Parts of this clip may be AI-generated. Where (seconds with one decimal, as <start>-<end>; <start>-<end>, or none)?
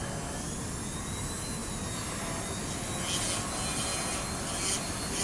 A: none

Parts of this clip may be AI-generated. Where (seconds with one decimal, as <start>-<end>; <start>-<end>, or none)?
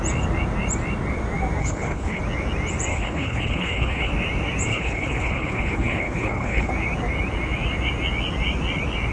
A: 1.6-2.2; 2.9-4.1; 4.7-6.7